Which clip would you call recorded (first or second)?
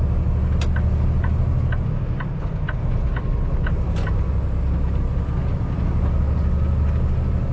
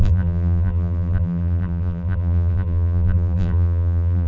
first